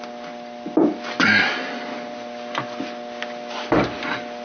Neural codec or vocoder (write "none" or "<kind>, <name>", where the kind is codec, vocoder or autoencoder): none